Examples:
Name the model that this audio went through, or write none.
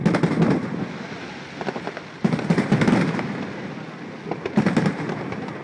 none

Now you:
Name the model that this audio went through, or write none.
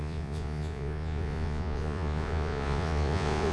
vocoder, Vocos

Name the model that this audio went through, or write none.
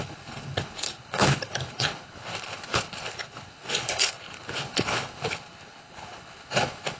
codec, HILCodec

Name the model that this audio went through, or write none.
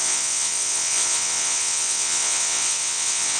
vocoder, WaveNeXt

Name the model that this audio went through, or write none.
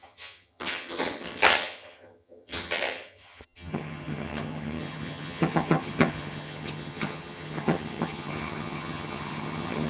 vocoder, HiFi-GAN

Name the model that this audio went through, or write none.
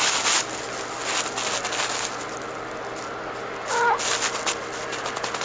none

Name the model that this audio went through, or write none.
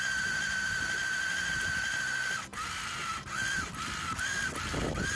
none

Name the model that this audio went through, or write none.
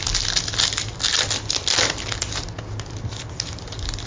none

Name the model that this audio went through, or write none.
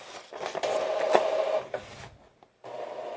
none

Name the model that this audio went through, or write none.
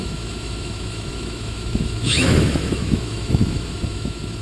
autoencoder, DAC-VAE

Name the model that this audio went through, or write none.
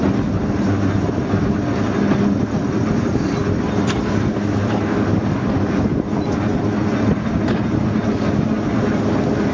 none